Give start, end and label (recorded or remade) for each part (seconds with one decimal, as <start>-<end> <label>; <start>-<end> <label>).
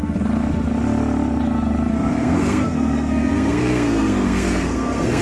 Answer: 0.0-1.9 recorded; 1.9-5.2 remade